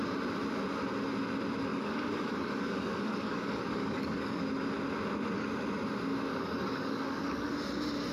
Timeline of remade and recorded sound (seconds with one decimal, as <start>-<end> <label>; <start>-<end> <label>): 0.0-1.7 recorded; 1.7-4.4 remade; 4.4-6.3 recorded; 6.3-7.5 remade; 7.5-8.1 recorded